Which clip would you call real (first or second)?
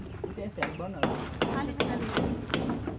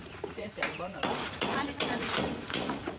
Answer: first